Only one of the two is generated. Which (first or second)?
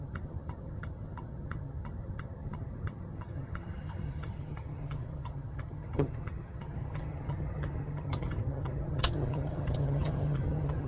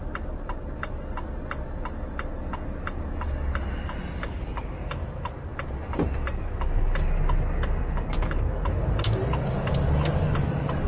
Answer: first